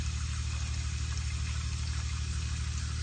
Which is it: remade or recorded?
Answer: recorded